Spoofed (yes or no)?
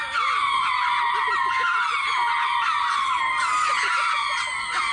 no